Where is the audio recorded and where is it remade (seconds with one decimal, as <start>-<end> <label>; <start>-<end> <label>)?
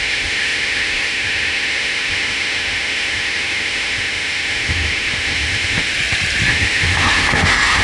0.0-5.9 remade; 5.9-6.5 recorded; 6.5-7.8 remade